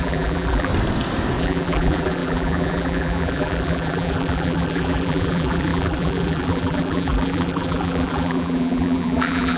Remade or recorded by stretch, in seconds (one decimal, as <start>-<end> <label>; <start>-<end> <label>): 0.0-0.7 remade; 0.7-1.4 recorded; 1.4-9.6 remade

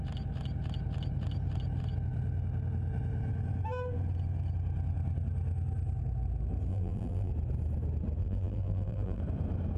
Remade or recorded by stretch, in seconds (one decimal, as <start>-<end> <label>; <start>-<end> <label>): 0.0-6.7 recorded; 6.7-7.3 remade; 7.3-8.2 recorded; 8.2-9.2 remade; 9.2-9.8 recorded

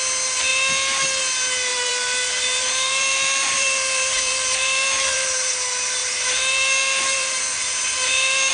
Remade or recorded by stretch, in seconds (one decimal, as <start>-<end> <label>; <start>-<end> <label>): 0.0-1.7 recorded; 1.7-5.5 remade; 5.5-6.0 recorded; 6.0-8.5 remade

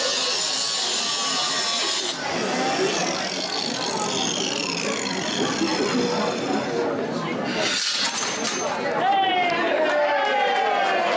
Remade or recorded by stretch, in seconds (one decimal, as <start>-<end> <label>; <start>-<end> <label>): 0.0-11.2 recorded

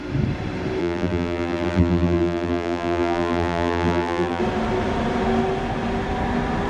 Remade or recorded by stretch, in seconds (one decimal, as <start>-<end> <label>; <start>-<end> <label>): 0.0-0.8 recorded; 0.8-4.4 remade; 4.4-6.7 recorded

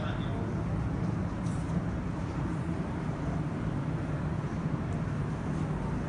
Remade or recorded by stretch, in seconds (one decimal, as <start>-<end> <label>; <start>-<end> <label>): 0.0-1.2 recorded; 1.2-4.9 remade; 4.9-6.1 recorded

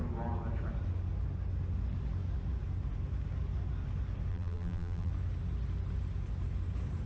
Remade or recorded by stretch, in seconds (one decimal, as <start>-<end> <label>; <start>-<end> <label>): 0.0-4.3 recorded; 4.3-5.1 remade; 5.1-7.1 recorded